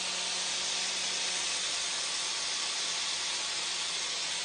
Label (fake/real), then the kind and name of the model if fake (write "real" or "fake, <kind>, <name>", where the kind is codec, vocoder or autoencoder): real